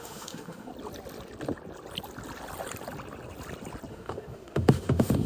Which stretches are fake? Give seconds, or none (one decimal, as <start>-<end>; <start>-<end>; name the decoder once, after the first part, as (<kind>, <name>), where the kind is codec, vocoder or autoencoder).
0.0-0.7 (autoencoder, DAC-VAE); 3.9-5.3